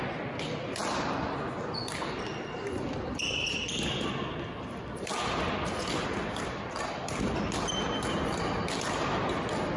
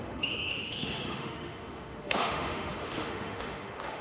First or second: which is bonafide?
first